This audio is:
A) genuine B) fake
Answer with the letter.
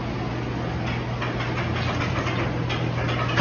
A